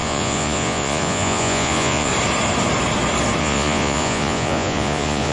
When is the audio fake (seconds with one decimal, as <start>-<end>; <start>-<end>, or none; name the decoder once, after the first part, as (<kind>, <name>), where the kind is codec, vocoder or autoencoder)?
0.0-2.1 (vocoder, Vocos); 3.4-5.3